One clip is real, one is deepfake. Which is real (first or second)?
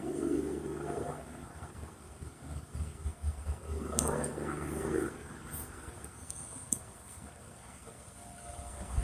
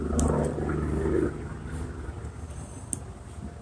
second